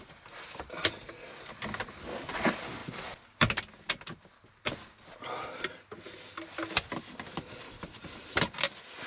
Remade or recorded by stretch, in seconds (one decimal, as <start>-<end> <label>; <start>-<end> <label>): 0.0-9.1 recorded